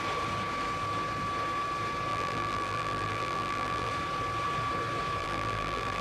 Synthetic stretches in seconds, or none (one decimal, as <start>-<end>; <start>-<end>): 2.1-3.9; 5.2-6.0